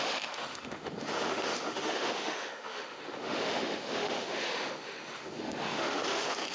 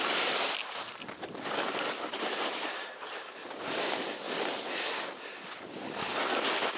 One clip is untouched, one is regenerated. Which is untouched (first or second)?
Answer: second